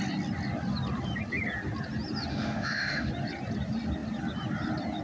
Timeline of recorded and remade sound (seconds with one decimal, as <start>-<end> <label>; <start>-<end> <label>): 0.0-2.3 recorded; 2.3-3.1 remade; 3.1-5.0 recorded